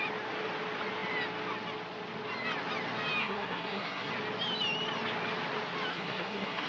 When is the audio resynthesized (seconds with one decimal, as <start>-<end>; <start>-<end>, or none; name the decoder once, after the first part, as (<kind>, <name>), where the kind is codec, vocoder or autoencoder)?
3.2-4.1 (codec, SNAC); 5.9-6.7